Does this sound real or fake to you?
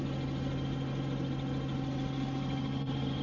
real